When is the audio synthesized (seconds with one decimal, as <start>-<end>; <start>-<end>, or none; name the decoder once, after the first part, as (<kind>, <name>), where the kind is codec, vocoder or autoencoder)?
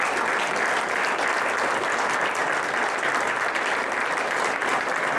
none